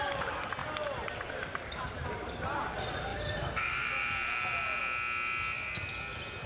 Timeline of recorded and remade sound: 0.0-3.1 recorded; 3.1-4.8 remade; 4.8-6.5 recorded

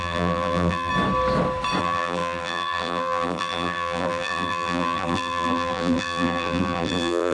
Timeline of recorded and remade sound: 0.0-0.9 remade; 0.9-1.8 recorded; 1.8-7.3 remade

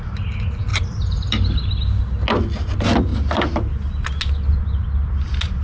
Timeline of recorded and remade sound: 0.0-0.7 recorded; 0.7-1.8 remade; 1.8-3.1 recorded; 3.1-3.9 remade; 3.9-5.6 recorded

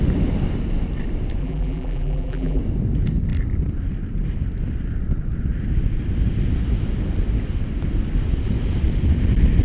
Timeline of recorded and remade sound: 0.0-1.4 recorded; 1.4-2.6 remade; 2.6-9.6 recorded

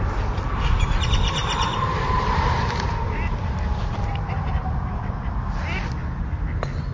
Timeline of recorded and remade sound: 0.0-1.4 recorded; 1.4-5.3 remade; 5.3-6.9 recorded

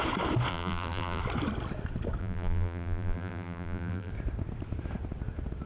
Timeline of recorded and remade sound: 0.0-0.5 recorded; 0.5-1.2 remade; 1.2-2.2 recorded; 2.2-4.1 remade; 4.1-5.7 recorded

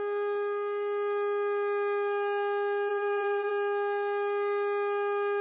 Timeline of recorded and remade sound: 0.0-2.9 recorded; 2.9-3.5 remade; 3.5-5.4 recorded